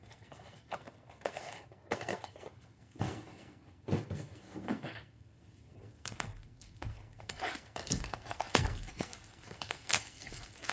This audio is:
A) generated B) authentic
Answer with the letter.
A